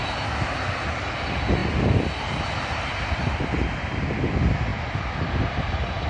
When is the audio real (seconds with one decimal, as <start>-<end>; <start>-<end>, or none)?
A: 0.0-4.7; 5.3-6.1